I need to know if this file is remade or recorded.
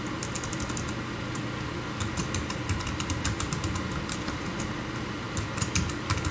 recorded